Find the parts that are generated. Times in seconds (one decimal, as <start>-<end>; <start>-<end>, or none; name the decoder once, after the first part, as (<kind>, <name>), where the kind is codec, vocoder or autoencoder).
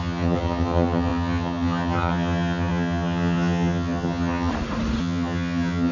0.0-4.5 (vocoder, HiFi-GAN); 5.0-5.9